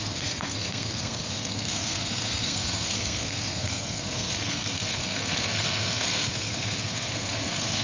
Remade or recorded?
remade